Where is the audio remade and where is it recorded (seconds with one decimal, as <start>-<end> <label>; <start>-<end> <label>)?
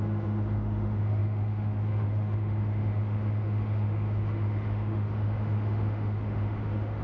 0.0-7.0 remade